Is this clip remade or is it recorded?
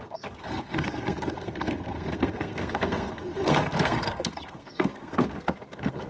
remade